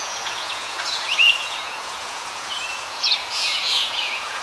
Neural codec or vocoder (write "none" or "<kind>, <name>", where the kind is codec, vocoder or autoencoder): vocoder, Vocos